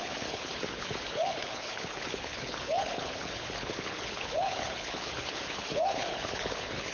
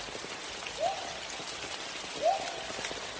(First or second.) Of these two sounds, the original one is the second